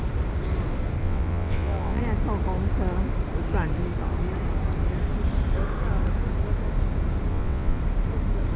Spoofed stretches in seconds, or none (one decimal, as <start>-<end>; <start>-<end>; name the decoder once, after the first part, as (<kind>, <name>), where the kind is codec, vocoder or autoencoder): 1.0-2.0 (vocoder, WaveNeXt); 7.3-7.8

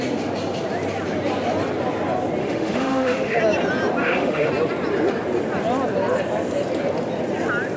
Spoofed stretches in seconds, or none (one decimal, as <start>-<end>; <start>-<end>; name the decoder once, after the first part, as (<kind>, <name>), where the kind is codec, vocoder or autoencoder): 2.4-3.4 (autoencoder, DAC-VAE); 4.0-4.5

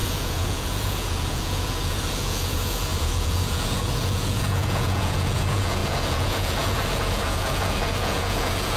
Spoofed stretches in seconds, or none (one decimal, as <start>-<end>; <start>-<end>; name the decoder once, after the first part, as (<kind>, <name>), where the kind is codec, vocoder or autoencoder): 0.0-8.8 (vocoder, Vocos)

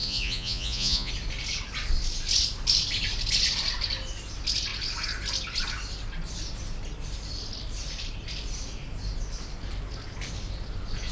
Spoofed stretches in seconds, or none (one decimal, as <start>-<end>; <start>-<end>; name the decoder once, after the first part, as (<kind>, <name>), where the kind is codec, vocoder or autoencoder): 0.0-1.1 (vocoder, Vocos)

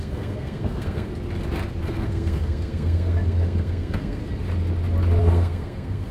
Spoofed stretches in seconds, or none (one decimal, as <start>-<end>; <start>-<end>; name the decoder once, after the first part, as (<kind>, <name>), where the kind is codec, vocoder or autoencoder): 0.0-1.1 (codec, SNAC); 1.8-4.2; 5.2-6.1

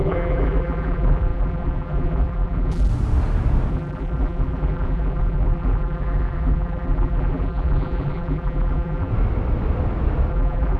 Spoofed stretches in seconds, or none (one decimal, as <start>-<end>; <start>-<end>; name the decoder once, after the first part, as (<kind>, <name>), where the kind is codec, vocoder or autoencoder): 0.0-2.9 (vocoder, BigVGAN v2); 3.7-9.1; 10.3-10.8

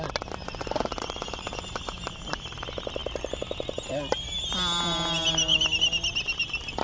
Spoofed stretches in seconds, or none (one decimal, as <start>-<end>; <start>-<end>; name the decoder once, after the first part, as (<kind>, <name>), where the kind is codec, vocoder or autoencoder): 0.4-1.9 (vocoder, Vocos)